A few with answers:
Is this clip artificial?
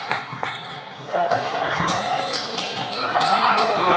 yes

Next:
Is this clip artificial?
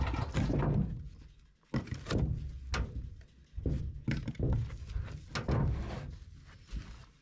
no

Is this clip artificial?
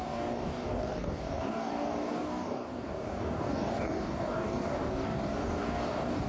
yes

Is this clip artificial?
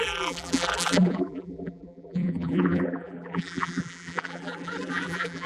yes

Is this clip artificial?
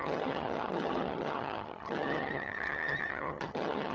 yes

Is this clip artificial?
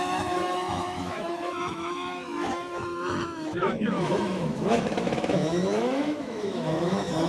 yes